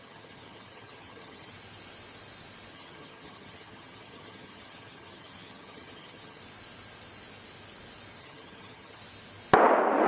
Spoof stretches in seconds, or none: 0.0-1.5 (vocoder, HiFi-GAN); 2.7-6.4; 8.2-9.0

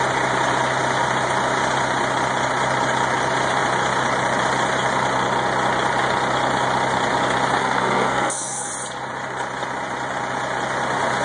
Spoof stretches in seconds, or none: 7.6-8.7 (codec, SNAC)